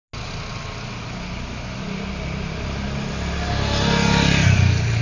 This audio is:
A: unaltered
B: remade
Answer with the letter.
A